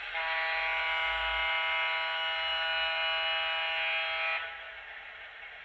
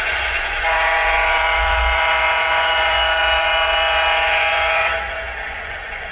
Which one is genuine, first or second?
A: first